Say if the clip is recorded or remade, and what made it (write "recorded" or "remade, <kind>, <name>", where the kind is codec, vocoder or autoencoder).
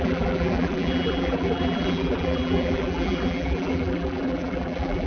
remade, vocoder, BigVGAN v2